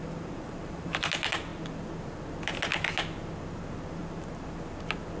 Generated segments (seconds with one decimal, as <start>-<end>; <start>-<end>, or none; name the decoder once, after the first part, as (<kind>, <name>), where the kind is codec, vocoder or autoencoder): 0.0-1.1 (vocoder, BigVGAN v2)